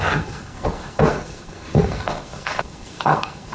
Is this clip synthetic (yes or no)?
yes